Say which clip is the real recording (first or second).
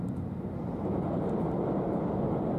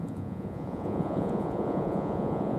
first